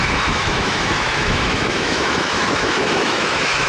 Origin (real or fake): fake